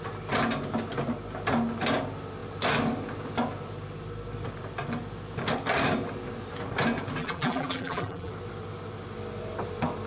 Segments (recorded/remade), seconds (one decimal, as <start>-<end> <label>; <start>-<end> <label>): 0.0-7.2 recorded; 7.2-8.3 remade; 8.3-10.1 recorded